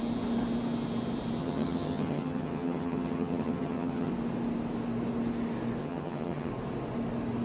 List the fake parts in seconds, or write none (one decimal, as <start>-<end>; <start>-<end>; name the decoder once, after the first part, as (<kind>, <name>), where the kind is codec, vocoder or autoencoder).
1.4-4.1 (vocoder, HiFi-GAN); 5.8-6.5